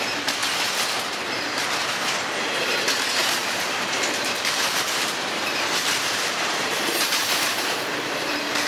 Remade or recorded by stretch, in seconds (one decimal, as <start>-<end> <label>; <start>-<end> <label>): 0.0-3.2 recorded; 3.2-8.7 remade